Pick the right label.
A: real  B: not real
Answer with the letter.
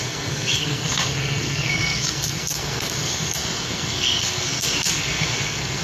B